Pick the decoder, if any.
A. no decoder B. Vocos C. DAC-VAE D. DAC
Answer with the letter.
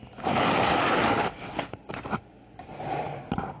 A